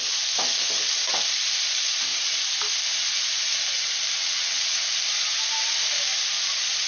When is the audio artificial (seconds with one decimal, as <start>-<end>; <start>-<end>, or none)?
4.2-4.8